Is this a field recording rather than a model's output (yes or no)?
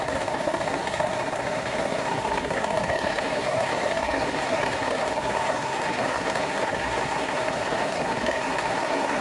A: no